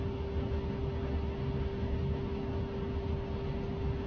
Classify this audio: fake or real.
real